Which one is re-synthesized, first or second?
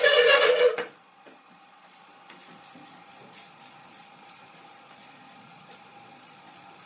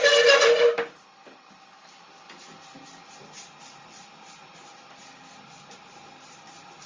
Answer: first